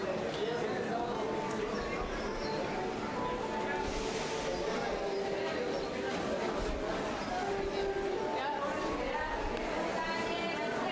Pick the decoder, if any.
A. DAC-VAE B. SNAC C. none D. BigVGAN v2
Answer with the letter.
C